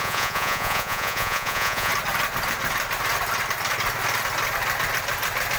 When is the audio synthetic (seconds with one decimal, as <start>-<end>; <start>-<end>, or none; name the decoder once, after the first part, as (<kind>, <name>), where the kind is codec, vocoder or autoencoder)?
0.0-1.9 (vocoder, Vocos)